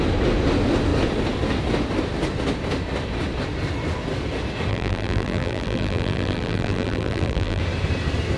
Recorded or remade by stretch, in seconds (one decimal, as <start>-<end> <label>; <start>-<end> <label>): 0.0-4.7 recorded; 4.7-7.6 remade; 7.6-8.4 recorded